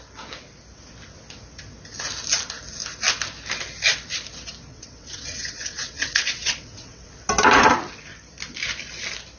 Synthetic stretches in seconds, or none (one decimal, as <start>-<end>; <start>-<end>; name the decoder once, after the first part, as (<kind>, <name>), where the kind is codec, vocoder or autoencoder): 4.7-7.1 (vocoder, WaveNeXt)